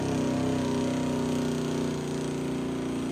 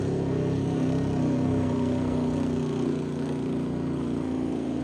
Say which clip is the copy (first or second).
second